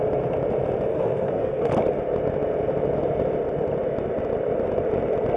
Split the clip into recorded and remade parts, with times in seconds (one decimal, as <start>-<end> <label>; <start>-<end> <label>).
0.0-0.9 recorded; 0.9-1.7 remade; 1.7-5.4 recorded